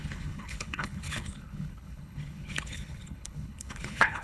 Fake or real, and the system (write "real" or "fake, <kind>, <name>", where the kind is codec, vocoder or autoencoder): fake, codec, HILCodec